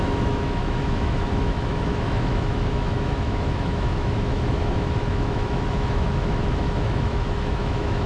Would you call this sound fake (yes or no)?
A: yes